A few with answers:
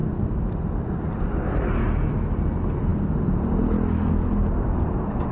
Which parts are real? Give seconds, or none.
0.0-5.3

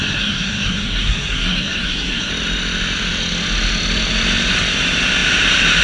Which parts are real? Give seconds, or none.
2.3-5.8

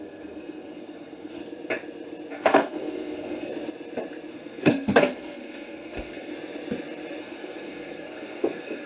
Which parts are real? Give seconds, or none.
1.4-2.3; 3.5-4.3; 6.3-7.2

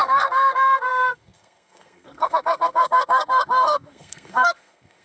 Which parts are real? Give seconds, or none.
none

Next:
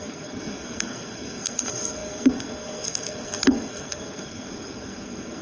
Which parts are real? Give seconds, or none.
none

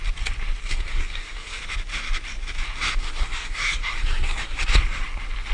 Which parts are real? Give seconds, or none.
0.0-0.6; 1.6-3.0; 4.7-5.5